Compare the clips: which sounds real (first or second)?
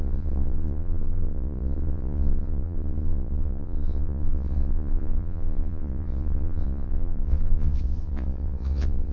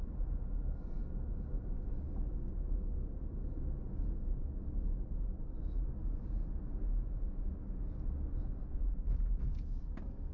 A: second